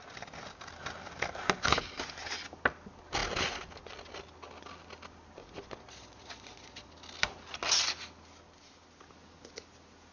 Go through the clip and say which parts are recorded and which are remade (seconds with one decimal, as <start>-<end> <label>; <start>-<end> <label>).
0.0-5.4 recorded; 5.4-6.9 remade; 6.9-10.1 recorded